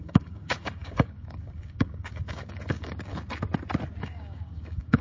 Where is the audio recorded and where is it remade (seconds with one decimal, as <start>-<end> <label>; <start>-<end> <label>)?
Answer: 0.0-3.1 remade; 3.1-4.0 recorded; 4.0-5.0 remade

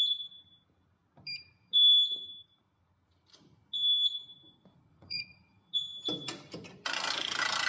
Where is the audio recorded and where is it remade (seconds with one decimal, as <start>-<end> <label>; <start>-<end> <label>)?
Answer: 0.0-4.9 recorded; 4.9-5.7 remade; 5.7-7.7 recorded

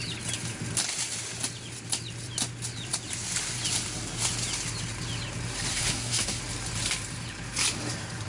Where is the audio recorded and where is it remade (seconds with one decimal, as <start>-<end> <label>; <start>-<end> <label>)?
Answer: 0.0-5.7 recorded; 5.7-6.4 remade; 6.4-8.3 recorded

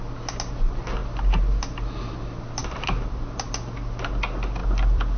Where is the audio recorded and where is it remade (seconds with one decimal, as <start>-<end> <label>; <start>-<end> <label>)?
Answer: 0.0-2.6 recorded; 2.6-3.2 remade; 3.2-4.6 recorded; 4.6-5.2 remade

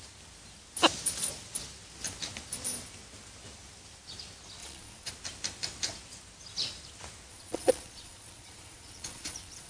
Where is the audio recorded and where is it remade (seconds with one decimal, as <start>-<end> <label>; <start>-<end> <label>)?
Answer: 0.0-4.6 recorded; 4.6-5.1 remade; 5.1-7.3 recorded; 7.3-9.7 remade